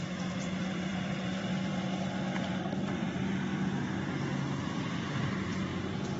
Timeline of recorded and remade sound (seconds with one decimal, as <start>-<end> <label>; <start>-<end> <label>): 0.0-1.7 remade; 1.7-2.4 recorded; 2.4-3.5 remade; 3.5-4.6 recorded; 4.6-5.5 remade; 5.5-6.2 recorded